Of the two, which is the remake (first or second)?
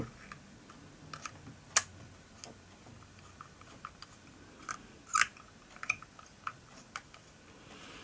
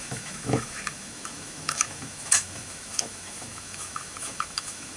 second